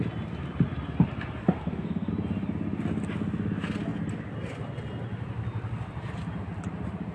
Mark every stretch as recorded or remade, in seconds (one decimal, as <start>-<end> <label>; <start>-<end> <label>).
0.0-1.4 recorded; 1.4-2.1 remade; 2.1-7.1 recorded